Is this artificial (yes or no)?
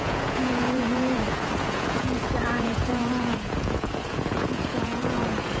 yes